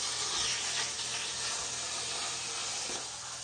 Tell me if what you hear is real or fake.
real